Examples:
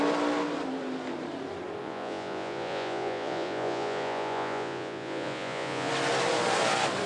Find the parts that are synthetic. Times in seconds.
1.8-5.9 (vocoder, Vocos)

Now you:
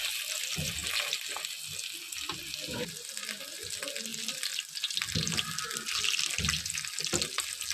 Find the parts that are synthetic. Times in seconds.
none

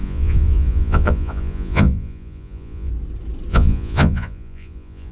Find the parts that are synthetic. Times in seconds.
0.0-2.9 (vocoder, Vocos); 3.5-5.1

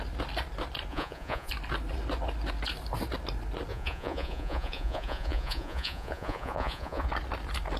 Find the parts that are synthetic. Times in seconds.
0.9-1.5 (vocoder, Vocos); 3.7-7.1

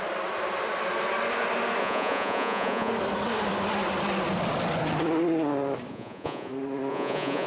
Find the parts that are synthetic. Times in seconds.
1.8-2.9 (vocoder, Vocos); 5.9-6.5; 6.9-7.5

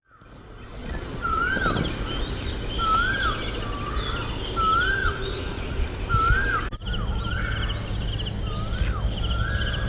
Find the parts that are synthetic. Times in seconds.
0.8-1.4 (vocoder, Vocos); 5.0-6.0